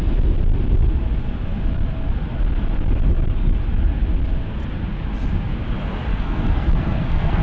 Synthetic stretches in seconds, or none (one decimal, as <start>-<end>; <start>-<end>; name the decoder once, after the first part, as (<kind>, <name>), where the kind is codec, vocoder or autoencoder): 6.1-7.4 (codec, SNAC)